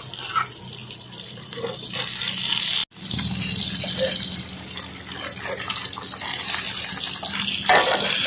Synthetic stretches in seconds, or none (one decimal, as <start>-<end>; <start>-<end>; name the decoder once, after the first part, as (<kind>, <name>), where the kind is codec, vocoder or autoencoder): 0.8-1.6 (vocoder, BigVGAN v2)